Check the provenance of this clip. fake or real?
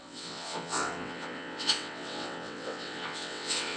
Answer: fake